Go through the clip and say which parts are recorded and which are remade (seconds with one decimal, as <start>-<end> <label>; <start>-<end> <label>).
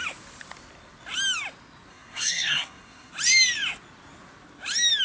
0.0-1.9 recorded; 1.9-3.1 remade; 3.1-5.0 recorded